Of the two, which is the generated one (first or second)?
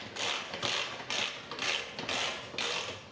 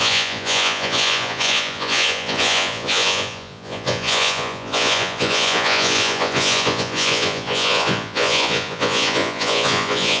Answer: second